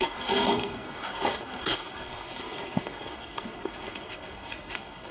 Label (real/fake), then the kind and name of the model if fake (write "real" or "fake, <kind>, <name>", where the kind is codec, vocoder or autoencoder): fake, codec, SNAC